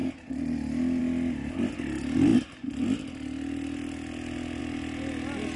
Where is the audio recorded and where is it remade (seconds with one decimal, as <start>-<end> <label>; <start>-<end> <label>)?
0.0-5.6 recorded